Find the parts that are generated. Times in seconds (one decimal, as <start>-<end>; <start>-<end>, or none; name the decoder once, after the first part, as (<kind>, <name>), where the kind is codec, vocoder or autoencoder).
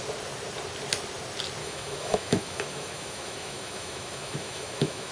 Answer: 1.6-5.1 (autoencoder, DAC-VAE)